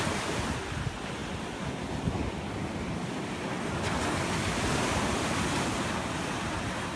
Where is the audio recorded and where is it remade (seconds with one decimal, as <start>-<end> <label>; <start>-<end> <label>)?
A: 0.0-7.0 recorded